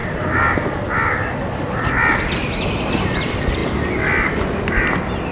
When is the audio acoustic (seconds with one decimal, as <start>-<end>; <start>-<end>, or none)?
0.0-3.6; 4.6-5.3